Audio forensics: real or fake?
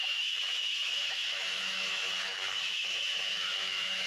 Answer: fake